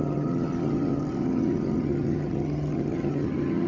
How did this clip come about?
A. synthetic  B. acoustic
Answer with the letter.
A